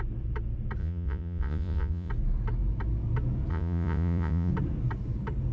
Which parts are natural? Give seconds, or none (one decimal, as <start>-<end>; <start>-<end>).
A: 0.0-0.8; 2.1-3.5; 4.5-5.5